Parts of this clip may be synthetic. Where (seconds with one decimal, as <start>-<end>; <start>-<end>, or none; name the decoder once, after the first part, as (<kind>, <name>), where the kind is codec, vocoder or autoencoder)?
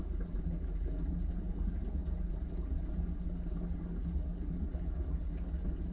none